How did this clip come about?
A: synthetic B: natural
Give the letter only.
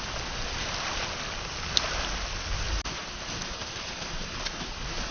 B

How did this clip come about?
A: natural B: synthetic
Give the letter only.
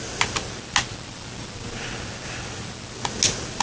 A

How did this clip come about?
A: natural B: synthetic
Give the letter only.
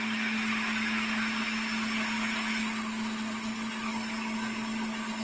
A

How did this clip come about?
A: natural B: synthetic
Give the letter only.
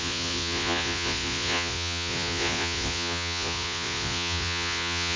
B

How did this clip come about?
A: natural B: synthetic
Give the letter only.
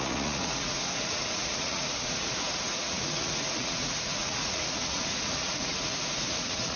B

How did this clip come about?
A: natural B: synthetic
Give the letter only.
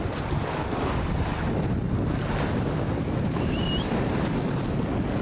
A